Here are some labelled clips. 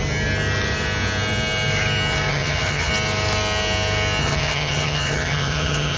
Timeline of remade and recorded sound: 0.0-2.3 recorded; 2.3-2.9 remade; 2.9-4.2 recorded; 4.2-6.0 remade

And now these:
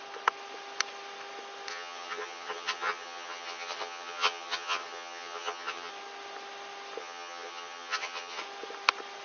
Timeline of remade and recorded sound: 0.0-1.7 recorded; 1.7-5.9 remade; 5.9-7.0 recorded; 7.0-8.4 remade; 8.4-9.2 recorded

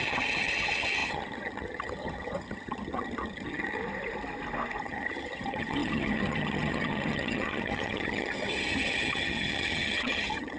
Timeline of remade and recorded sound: 0.0-3.8 remade; 3.8-4.8 recorded; 4.8-10.6 remade

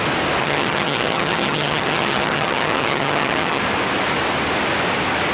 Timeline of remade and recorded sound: 0.0-0.4 recorded; 0.4-3.6 remade; 3.6-5.3 recorded

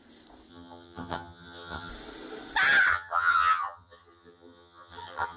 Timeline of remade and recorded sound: 0.0-0.5 recorded; 0.5-1.9 remade; 1.9-2.9 recorded; 2.9-5.4 remade

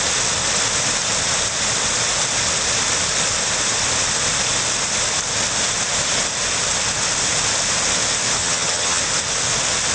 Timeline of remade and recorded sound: 0.0-8.4 recorded; 8.4-9.0 remade; 9.0-9.9 recorded